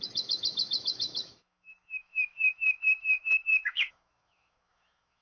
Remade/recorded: remade